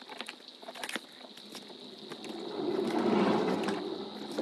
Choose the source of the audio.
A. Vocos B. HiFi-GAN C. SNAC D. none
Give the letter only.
D